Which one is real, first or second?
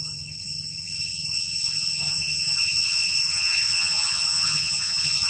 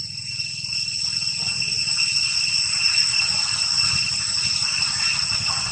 second